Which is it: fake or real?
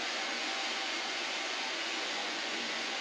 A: fake